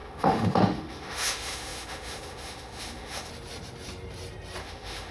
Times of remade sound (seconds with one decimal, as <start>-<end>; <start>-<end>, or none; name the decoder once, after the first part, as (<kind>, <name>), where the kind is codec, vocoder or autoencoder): 0.0-3.3 (autoencoder, DAC-VAE); 4.6-5.1